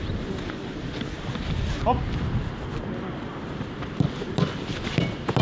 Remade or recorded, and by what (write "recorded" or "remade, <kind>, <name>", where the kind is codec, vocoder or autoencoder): recorded